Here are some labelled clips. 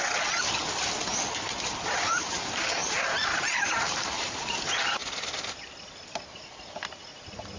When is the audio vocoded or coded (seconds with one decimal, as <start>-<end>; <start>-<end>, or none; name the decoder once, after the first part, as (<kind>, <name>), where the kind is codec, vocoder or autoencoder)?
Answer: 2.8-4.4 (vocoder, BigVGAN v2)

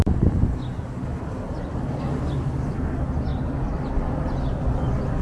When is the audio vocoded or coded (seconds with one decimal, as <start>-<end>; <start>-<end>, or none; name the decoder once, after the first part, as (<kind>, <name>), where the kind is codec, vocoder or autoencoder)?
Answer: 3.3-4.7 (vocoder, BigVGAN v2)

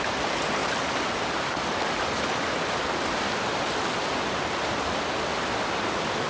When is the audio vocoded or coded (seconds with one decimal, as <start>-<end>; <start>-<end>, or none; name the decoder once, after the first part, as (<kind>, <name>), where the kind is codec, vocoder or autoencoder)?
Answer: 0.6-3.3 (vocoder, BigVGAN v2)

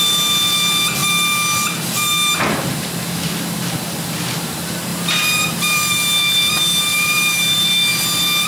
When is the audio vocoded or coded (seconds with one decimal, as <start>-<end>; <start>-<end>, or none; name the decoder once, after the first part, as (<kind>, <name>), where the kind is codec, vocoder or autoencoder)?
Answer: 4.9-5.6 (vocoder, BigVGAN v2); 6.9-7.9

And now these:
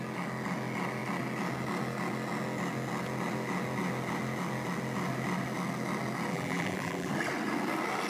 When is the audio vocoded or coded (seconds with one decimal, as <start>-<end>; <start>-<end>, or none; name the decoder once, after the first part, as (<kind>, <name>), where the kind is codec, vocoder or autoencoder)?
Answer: 6.3-7.1 (vocoder, BigVGAN v2)

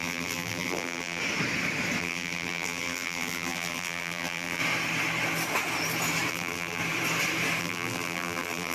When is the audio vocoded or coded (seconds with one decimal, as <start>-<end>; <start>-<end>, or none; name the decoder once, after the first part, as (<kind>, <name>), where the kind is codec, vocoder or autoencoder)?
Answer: 0.0-1.2 (vocoder, BigVGAN v2); 2.0-4.6; 6.3-6.8; 7.6-8.7

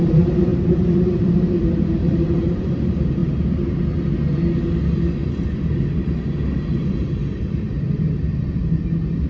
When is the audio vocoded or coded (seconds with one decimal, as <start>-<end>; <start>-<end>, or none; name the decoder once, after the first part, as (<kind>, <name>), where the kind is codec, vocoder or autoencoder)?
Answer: 0.0-3.2 (vocoder, BigVGAN v2); 6.9-9.3